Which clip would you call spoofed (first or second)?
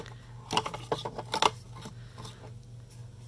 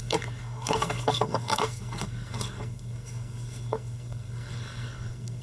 second